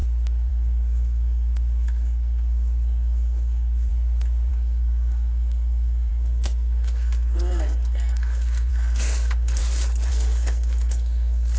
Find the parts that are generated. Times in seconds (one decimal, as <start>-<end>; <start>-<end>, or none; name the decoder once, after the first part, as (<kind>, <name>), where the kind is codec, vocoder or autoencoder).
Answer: 0.5-3.9 (codec, SNAC); 4.5-9.6; 10.1-11.6